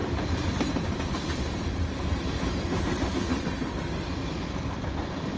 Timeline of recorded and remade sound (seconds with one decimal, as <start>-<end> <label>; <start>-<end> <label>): 0.0-0.5 remade; 0.5-5.4 recorded